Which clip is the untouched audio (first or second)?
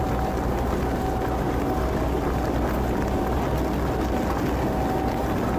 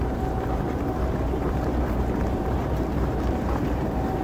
first